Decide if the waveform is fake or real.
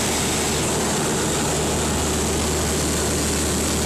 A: real